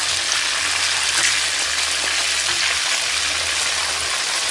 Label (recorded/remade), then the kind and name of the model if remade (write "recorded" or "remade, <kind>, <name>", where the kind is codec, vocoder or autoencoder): recorded